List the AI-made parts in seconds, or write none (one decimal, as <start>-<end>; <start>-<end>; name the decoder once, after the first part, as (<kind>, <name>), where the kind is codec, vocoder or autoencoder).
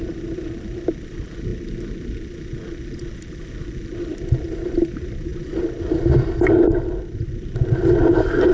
0.0-1.5 (vocoder, BigVGAN v2); 4.0-8.5